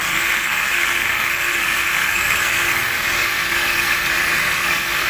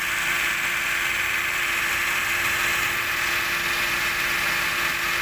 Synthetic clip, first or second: first